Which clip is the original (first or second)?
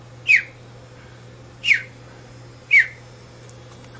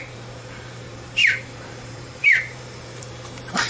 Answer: first